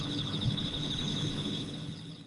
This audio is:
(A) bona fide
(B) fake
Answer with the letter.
B